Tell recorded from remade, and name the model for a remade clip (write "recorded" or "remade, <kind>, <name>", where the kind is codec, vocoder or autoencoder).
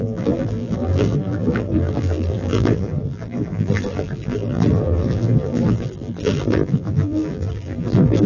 remade, vocoder, BigVGAN v2